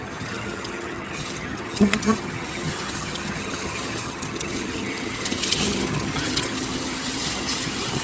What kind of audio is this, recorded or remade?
remade